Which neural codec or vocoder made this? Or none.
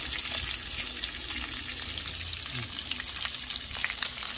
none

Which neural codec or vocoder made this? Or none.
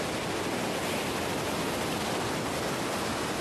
none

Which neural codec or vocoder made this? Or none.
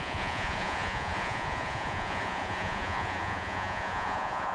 vocoder, Vocos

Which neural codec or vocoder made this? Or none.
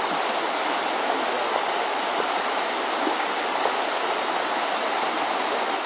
none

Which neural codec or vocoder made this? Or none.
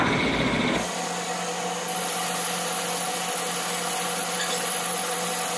none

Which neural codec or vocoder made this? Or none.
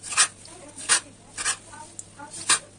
none